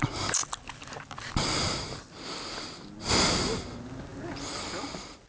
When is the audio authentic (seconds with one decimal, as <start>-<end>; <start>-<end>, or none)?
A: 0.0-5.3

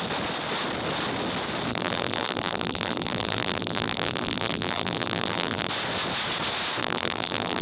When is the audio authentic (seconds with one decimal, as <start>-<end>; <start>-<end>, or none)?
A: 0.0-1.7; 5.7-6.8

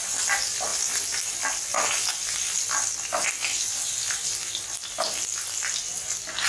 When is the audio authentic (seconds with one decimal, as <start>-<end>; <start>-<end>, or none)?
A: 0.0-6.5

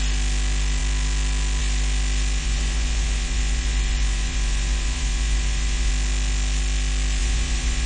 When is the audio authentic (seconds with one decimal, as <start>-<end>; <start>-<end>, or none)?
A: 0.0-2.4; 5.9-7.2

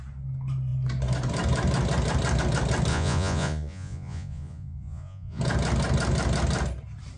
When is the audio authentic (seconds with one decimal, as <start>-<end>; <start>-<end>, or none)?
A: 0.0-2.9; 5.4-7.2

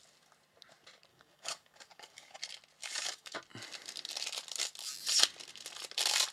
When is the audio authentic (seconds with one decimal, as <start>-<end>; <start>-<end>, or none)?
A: 0.0-1.1; 2.4-2.8; 3.4-6.3

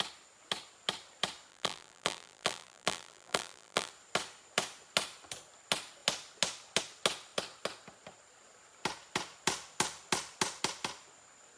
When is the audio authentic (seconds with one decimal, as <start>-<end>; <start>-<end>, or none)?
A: 0.0-1.5; 3.9-11.6